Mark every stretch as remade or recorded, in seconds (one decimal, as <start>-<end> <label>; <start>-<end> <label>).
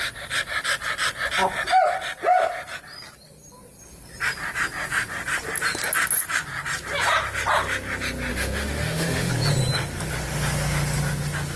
0.0-8.3 recorded; 8.3-9.3 remade; 9.3-11.6 recorded